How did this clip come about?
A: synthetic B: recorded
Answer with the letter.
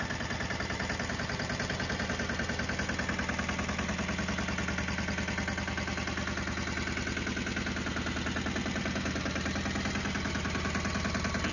B